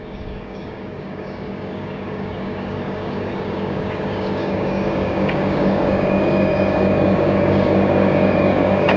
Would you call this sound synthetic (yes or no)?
yes